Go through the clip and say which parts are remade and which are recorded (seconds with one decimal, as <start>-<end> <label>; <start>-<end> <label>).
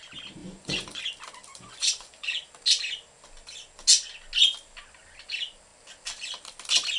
0.0-0.4 recorded; 0.4-1.0 remade; 1.0-1.5 recorded; 1.5-2.5 remade; 2.5-7.0 recorded